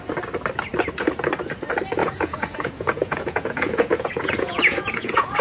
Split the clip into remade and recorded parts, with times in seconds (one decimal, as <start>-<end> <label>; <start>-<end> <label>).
0.0-2.0 recorded; 2.0-5.4 remade